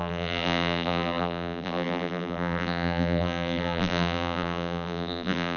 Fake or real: fake